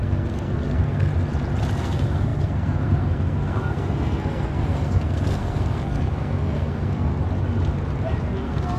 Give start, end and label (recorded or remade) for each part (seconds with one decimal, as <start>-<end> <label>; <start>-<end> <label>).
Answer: 0.0-1.1 remade; 1.1-1.8 recorded; 1.8-7.1 remade; 7.1-8.2 recorded; 8.2-8.8 remade